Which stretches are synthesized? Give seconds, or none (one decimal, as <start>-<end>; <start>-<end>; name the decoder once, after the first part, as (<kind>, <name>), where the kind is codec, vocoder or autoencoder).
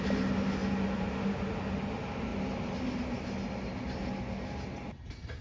none